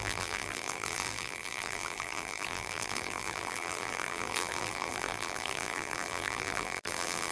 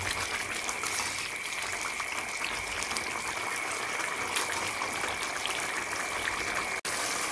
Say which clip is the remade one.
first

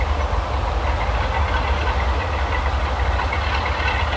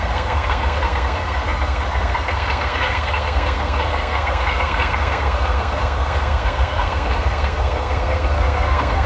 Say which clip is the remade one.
second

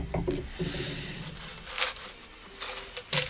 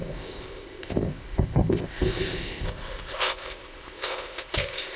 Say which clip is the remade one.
second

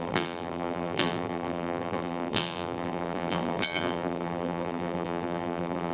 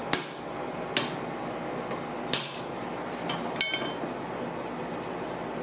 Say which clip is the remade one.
first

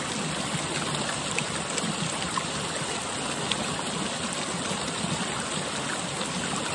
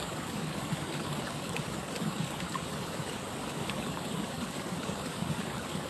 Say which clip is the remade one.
second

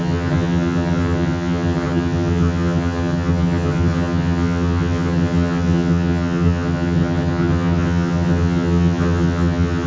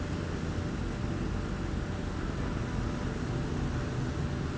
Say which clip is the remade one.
first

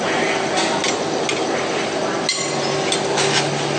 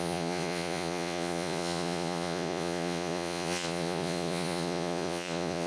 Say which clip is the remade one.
second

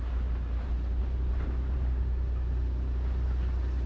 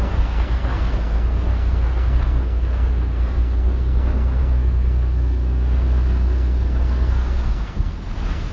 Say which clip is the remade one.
second